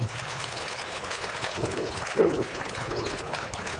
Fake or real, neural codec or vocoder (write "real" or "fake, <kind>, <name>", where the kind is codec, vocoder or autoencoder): fake, codec, HILCodec